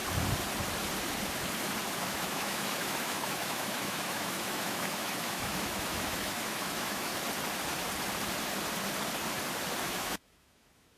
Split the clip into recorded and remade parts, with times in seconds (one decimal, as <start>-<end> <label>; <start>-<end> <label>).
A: 0.0-2.0 recorded; 2.0-7.1 remade; 7.1-9.8 recorded; 9.8-11.0 remade